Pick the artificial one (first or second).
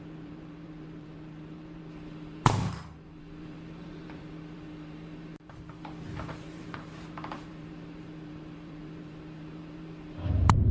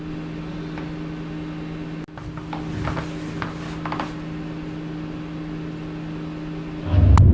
first